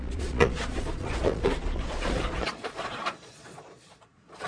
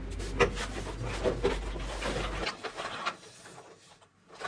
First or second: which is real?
second